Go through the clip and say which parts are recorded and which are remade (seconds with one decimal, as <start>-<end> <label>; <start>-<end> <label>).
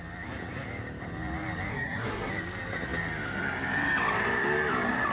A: 0.0-1.7 recorded; 1.7-2.3 remade; 2.3-5.1 recorded